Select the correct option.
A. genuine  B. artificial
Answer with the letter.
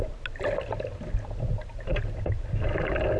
A